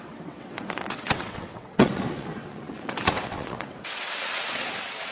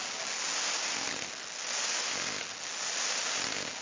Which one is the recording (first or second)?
second